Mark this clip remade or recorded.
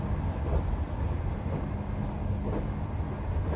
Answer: recorded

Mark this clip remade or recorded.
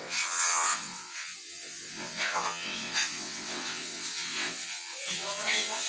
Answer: remade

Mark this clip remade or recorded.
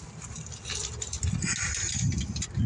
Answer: recorded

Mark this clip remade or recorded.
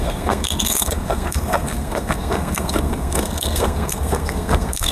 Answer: remade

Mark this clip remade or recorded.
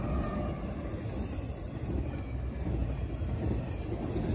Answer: recorded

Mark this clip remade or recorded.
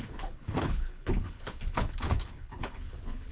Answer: remade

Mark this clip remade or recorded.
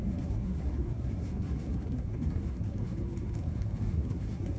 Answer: remade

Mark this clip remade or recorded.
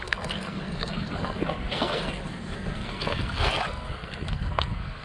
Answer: remade